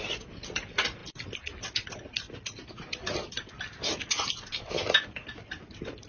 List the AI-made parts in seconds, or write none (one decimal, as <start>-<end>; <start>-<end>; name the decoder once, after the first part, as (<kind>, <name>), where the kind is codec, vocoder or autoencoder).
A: none